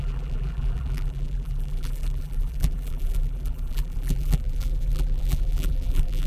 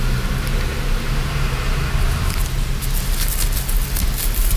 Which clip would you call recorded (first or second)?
second